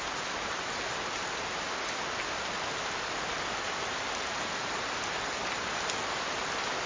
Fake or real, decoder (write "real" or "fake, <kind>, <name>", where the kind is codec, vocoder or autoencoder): real